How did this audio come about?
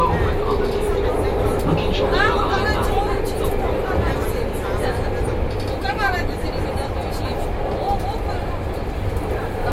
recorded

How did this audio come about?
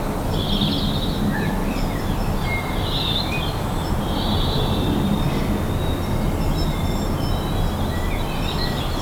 recorded